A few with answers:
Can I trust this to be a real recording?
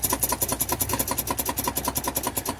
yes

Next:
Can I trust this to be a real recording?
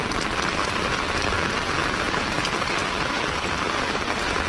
yes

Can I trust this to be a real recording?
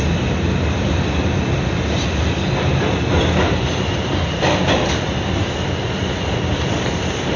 yes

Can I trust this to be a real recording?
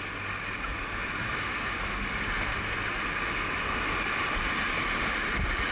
yes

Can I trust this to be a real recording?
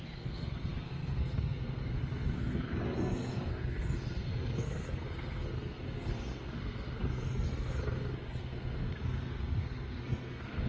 no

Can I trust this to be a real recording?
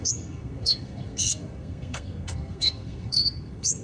no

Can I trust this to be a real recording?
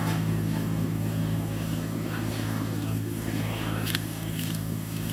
no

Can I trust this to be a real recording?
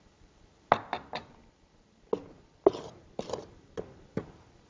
yes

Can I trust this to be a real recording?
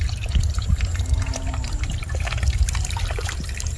no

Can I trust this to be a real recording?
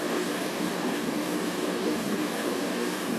no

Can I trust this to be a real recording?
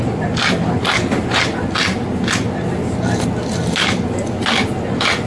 yes